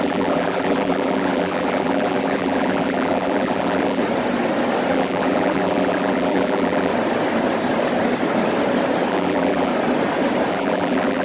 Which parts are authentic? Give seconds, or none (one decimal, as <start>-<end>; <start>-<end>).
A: 4.0-4.9; 6.9-9.1; 9.7-10.5